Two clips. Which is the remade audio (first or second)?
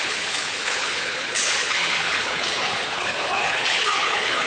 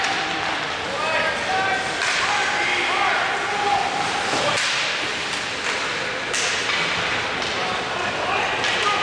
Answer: first